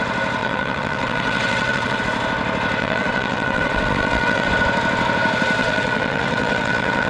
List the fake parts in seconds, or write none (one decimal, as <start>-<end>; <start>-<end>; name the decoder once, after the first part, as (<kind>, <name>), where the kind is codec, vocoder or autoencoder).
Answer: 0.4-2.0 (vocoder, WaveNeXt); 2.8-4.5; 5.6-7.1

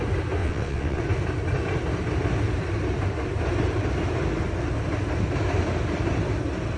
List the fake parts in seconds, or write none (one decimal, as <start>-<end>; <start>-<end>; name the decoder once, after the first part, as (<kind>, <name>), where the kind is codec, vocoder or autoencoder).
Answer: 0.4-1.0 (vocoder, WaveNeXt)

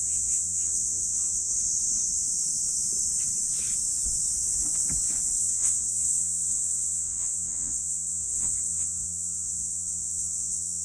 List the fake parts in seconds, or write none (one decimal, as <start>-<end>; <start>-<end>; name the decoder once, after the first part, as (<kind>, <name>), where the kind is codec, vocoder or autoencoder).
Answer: 0.0-1.5 (vocoder, WaveNeXt); 5.4-10.8

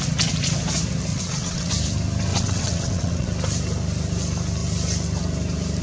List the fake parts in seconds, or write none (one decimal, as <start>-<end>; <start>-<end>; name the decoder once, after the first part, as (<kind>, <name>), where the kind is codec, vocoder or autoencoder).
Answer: 1.1-1.7 (vocoder, WaveNeXt); 2.3-3.3

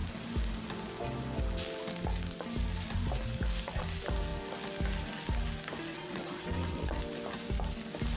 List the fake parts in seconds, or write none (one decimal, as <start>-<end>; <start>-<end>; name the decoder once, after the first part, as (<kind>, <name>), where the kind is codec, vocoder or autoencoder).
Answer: 5.9-7.0 (vocoder, WaveNeXt)